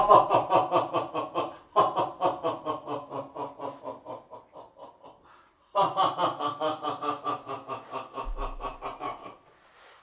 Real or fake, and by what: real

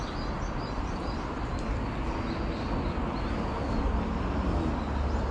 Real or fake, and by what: real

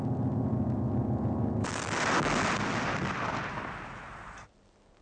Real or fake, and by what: real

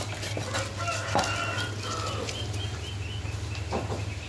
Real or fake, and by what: real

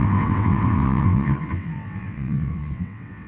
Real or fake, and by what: fake, vocoder, WaveNeXt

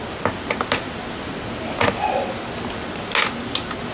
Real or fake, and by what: real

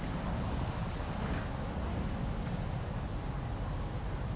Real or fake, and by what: real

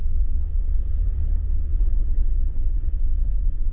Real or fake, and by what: fake, vocoder, WaveNeXt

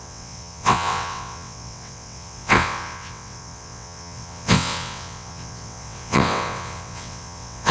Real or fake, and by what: fake, vocoder, WaveNeXt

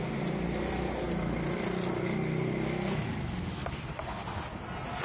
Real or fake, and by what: real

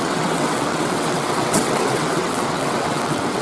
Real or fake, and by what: fake, vocoder, WaveNeXt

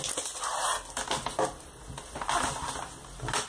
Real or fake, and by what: real